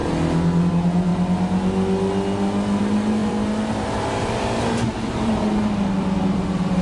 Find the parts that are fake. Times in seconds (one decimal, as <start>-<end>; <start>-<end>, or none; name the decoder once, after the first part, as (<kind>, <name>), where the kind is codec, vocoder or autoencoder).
0.7-1.1 (vocoder, BigVGAN v2); 2.8-6.8